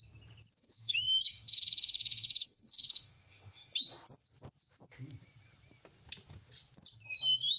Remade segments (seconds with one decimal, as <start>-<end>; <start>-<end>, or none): 0.5-3.7